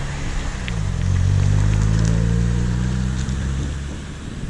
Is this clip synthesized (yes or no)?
yes